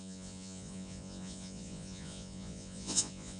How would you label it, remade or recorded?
remade